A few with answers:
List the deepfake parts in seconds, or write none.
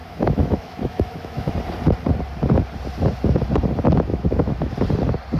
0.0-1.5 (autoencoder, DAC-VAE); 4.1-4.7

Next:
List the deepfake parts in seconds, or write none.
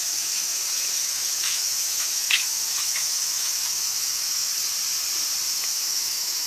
0.0-4.5 (autoencoder, DAC-VAE); 5.5-6.5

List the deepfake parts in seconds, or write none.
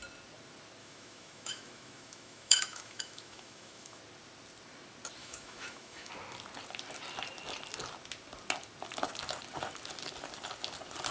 0.8-4.0 (autoencoder, DAC-VAE); 5.2-6.1